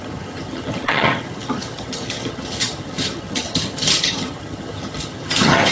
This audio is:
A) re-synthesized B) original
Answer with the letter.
A